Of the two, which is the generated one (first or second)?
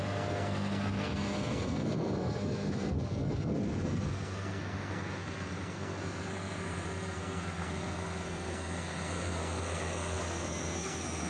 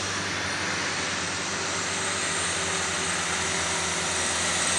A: first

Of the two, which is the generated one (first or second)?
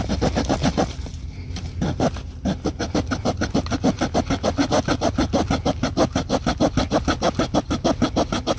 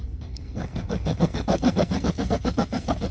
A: second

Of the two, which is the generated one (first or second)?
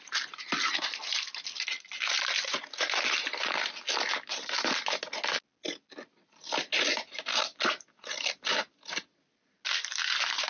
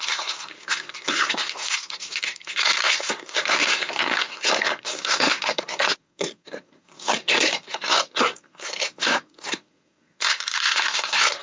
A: second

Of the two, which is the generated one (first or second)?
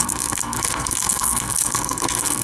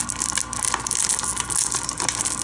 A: first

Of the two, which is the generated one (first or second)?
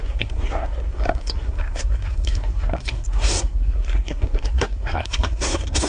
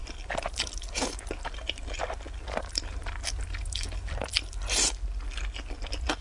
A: first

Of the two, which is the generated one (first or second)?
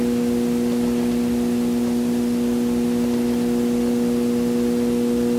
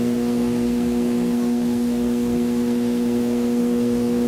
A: second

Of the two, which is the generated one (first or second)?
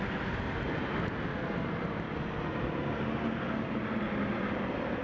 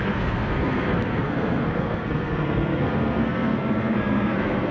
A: second